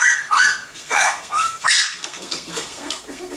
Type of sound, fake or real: fake